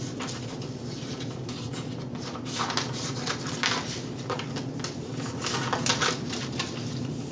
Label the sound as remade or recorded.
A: recorded